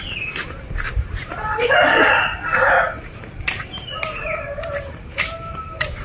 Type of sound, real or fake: fake